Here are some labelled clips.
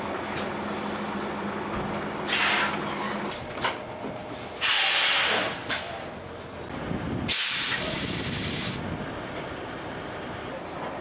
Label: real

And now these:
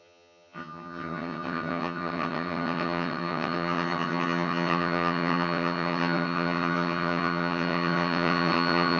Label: fake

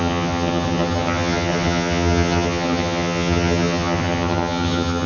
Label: fake